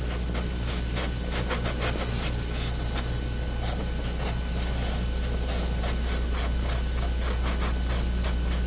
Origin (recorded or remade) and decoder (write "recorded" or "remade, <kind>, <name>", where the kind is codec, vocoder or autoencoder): recorded